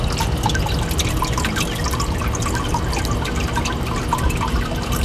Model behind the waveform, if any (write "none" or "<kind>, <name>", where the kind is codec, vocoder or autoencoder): none